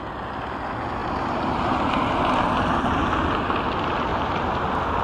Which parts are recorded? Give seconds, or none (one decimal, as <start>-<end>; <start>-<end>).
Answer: 0.0-1.0; 2.8-4.1; 4.6-5.0